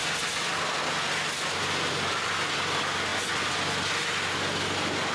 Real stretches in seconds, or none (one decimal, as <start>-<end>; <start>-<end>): 0.0-5.1